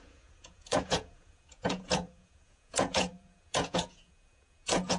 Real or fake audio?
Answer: fake